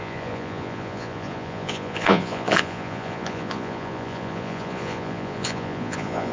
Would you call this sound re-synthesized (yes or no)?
yes